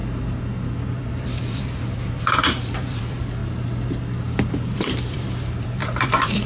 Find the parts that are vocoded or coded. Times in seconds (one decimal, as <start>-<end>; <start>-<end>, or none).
0.9-3.4; 4.5-6.5